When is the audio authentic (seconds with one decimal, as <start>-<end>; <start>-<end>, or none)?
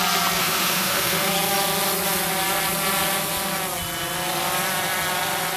0.0-0.4; 1.3-5.6